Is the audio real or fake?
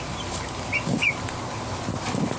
real